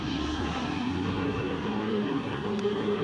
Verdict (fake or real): fake